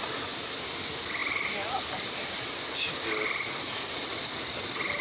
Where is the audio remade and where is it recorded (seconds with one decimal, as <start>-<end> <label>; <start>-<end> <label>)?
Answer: 0.0-5.0 recorded